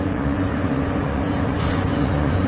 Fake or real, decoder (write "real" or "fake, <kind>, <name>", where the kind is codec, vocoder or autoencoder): fake, vocoder, Vocos